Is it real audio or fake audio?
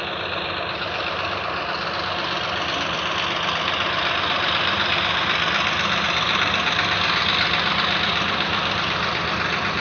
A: real